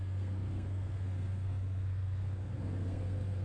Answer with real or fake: fake